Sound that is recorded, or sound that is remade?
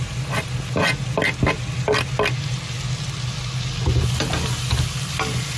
recorded